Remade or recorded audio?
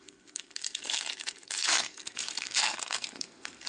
remade